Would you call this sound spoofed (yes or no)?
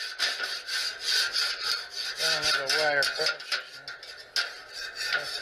no